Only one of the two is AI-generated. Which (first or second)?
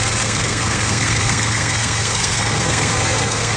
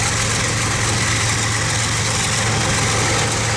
first